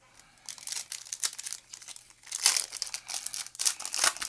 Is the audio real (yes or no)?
yes